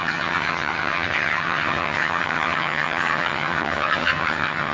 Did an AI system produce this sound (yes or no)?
yes